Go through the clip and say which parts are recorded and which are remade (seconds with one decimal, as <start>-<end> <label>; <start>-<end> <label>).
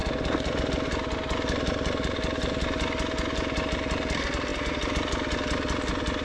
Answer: 0.0-6.2 recorded